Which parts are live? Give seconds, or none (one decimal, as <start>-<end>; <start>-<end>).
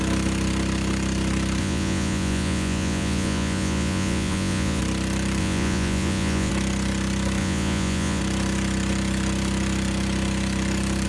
0.0-1.6; 4.8-5.4; 6.5-7.4; 8.2-11.1